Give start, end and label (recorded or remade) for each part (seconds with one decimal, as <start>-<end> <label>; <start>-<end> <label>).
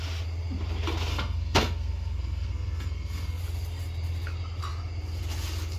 0.0-1.1 recorded; 1.1-3.4 remade; 3.4-5.8 recorded